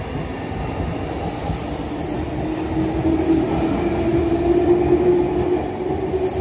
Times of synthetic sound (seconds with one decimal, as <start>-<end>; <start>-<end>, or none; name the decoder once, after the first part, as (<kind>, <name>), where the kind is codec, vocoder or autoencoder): none